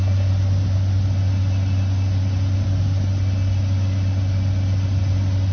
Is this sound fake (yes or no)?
no